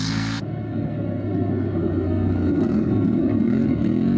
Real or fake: fake